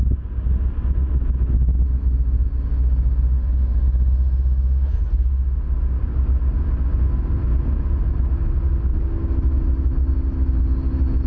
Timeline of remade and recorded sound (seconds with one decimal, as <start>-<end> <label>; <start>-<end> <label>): 0.0-11.3 recorded